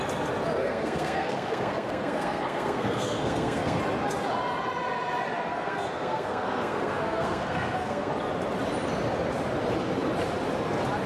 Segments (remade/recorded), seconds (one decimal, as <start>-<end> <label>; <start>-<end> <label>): 0.0-0.6 recorded; 0.6-3.8 remade; 3.8-5.5 recorded; 5.5-8.1 remade; 8.1-11.1 recorded